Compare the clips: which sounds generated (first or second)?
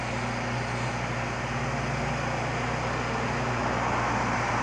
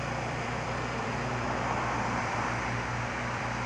second